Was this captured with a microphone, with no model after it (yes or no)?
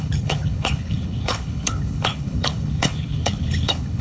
no